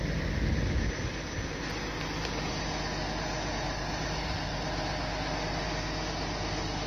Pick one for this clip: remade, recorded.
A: recorded